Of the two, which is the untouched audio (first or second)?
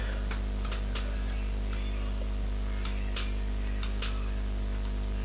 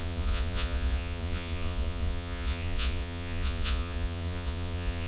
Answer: first